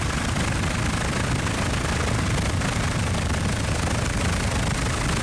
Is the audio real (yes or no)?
yes